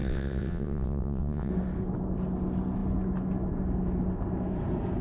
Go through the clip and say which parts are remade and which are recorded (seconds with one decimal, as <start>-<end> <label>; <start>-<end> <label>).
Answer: 0.0-1.5 remade; 1.5-5.0 recorded